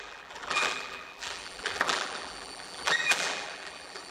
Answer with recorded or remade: remade